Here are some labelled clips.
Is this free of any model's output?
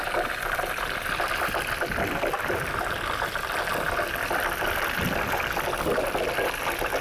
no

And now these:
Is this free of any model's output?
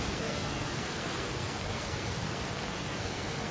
no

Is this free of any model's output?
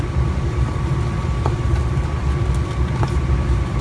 no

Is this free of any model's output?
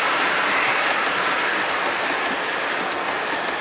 yes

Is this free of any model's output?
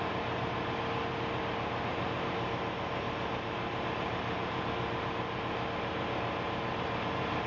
yes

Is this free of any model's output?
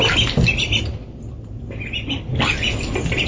yes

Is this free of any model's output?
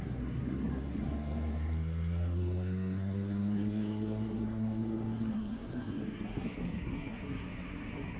no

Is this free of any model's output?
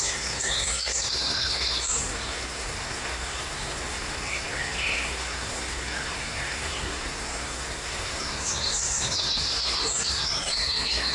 no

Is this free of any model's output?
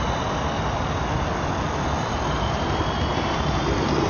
yes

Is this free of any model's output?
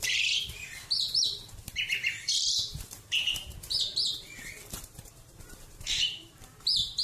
no